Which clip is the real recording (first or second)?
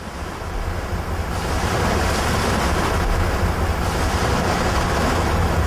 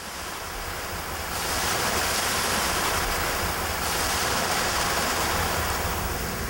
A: first